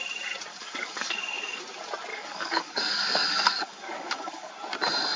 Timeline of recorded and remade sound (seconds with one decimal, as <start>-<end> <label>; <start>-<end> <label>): 0.0-0.5 recorded; 0.5-1.6 remade; 1.6-2.1 recorded; 2.1-4.5 remade; 4.5-5.2 recorded